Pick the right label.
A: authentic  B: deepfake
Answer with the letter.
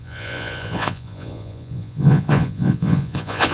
B